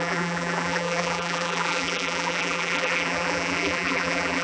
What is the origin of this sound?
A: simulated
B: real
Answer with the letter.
A